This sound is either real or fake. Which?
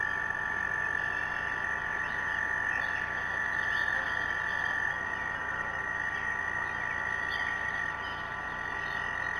real